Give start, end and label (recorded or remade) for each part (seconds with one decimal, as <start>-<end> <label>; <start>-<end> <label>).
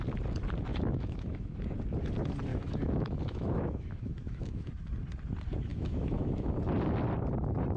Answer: 0.0-0.7 recorded; 0.7-1.6 remade; 1.6-2.5 recorded; 2.5-4.7 remade; 4.7-5.7 recorded; 5.7-6.5 remade; 6.5-7.8 recorded